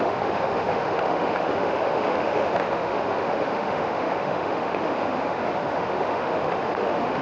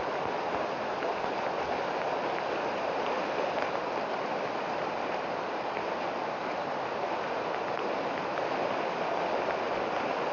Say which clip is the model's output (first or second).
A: first